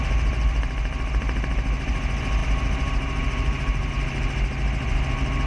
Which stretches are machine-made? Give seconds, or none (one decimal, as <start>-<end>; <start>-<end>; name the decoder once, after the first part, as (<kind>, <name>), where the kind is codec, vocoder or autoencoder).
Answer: 2.4-3.9 (vocoder, BigVGAN v2)